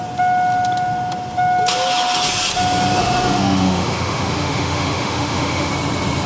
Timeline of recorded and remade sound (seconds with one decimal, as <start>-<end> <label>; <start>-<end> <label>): 0.0-3.0 recorded; 3.0-5.7 remade; 5.7-6.3 recorded